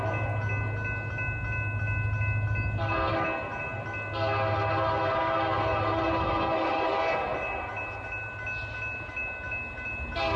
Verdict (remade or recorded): recorded